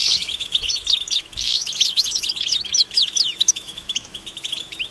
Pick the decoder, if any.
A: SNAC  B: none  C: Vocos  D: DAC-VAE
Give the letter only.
D